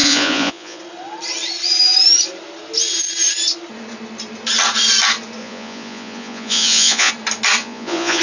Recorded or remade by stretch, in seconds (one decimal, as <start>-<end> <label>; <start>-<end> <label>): 0.0-0.8 remade; 0.8-5.4 recorded; 5.4-7.1 remade; 7.1-7.6 recorded; 7.6-8.2 remade